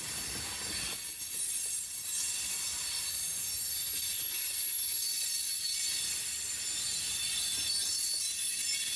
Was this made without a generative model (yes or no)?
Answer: yes